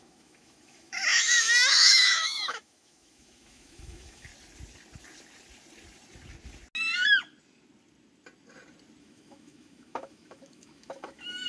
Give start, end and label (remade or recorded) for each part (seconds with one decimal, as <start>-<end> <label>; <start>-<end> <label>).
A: 0.0-4.3 remade; 4.3-9.0 recorded; 9.0-11.5 remade

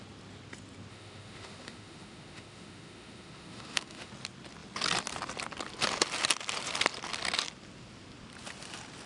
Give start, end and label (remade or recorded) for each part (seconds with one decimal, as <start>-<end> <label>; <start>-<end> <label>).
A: 0.0-0.9 recorded; 0.9-4.1 remade; 4.1-9.1 recorded

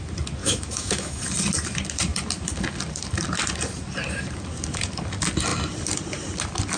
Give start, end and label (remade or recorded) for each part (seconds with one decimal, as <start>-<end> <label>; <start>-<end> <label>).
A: 0.0-0.4 recorded; 0.4-1.2 remade; 1.2-6.8 recorded

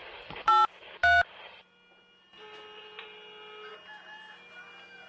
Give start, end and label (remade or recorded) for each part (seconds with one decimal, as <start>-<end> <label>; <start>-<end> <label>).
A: 0.0-5.1 recorded

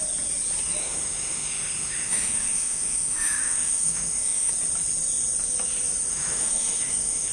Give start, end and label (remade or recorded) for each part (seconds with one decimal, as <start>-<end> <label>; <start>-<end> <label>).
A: 0.0-0.8 recorded; 0.8-4.5 remade; 4.5-6.1 recorded; 6.1-7.3 remade

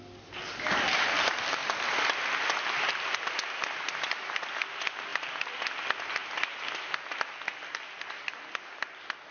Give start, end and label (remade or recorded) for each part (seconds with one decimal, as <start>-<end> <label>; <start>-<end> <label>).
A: 0.0-9.3 recorded